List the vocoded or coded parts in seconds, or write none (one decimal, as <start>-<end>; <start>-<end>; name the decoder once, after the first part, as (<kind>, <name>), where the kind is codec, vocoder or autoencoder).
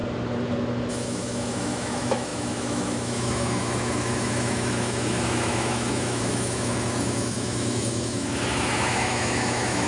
0.9-9.9 (autoencoder, DAC-VAE)